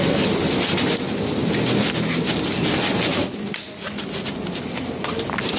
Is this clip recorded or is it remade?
recorded